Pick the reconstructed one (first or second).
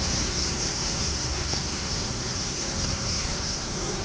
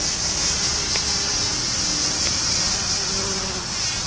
first